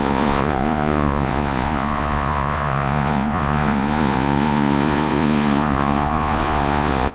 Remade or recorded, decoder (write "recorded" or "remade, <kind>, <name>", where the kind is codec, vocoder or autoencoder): remade, vocoder, Vocos